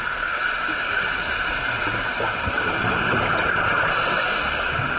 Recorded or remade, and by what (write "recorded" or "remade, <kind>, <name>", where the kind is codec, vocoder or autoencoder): recorded